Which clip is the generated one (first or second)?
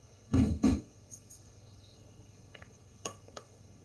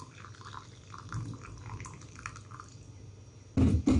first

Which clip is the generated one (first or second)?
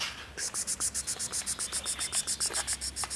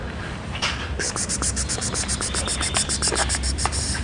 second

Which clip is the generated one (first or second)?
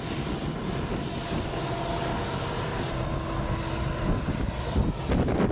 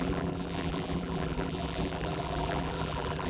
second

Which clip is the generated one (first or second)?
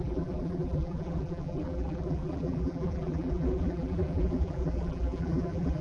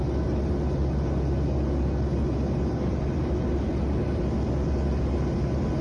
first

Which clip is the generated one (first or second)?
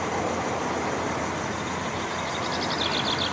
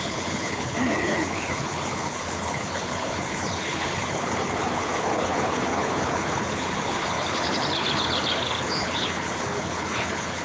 second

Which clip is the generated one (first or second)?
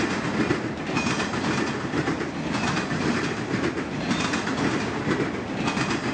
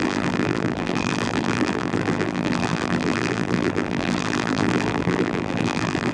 second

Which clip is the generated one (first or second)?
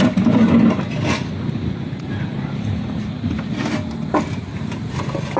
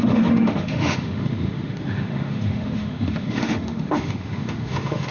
second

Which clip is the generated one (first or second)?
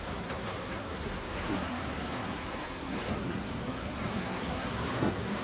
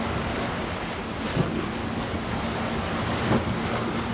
first